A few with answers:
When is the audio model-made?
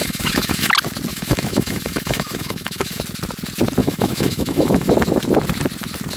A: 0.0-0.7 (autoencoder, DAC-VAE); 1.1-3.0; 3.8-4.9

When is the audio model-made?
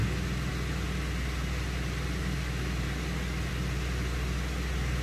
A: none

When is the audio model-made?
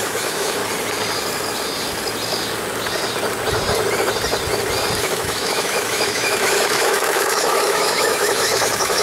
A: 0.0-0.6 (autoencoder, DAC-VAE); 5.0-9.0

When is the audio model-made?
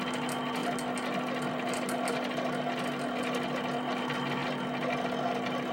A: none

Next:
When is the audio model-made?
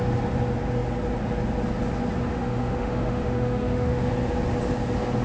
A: 2.3-4.1 (autoencoder, DAC-VAE)